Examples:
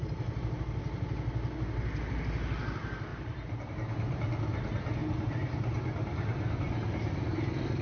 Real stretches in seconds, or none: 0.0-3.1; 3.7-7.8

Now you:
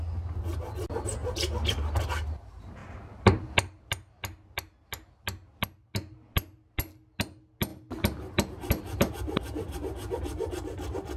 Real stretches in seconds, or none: 0.0-1.2; 2.2-11.2